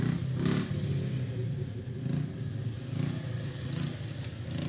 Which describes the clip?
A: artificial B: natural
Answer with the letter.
B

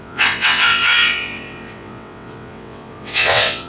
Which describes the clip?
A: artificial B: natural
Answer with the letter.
A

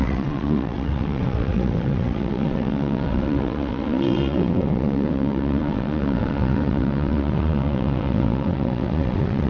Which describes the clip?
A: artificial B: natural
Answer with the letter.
A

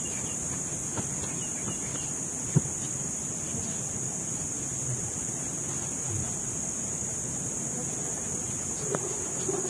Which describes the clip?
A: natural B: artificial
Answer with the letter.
A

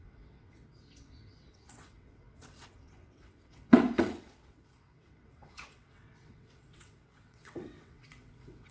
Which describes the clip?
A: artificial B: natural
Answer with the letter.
A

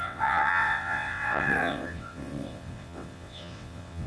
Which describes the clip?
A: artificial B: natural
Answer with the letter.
A